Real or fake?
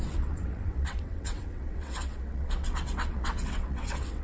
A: fake